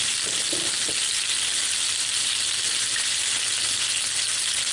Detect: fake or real real